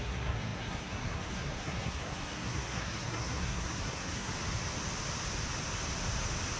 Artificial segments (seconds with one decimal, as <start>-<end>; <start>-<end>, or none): 0.0-4.3